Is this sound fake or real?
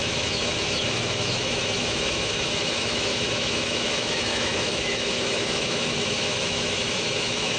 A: fake